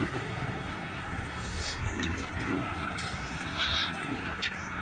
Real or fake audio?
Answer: fake